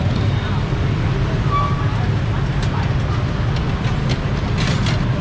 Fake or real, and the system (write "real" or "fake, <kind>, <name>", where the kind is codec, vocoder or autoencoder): real